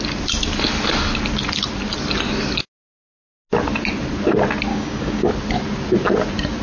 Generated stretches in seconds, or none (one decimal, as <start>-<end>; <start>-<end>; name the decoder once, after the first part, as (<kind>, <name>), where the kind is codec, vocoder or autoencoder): 4.7-5.3 (codec, DAC)